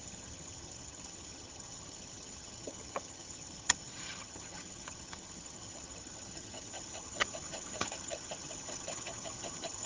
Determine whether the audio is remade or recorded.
remade